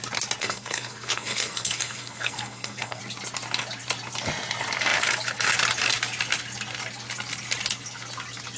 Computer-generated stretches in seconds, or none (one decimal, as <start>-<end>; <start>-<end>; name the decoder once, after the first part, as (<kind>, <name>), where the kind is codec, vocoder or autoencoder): 0.4-3.0 (codec, SNAC)